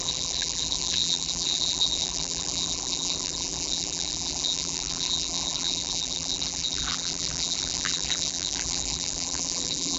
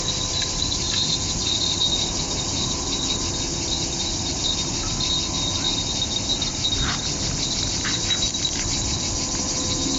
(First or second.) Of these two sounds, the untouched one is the second